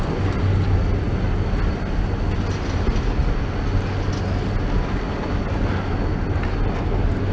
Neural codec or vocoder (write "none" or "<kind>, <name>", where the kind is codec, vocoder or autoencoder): none